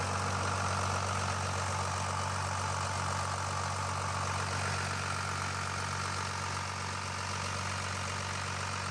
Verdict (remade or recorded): recorded